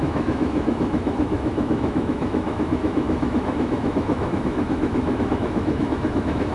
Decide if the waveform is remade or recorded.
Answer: remade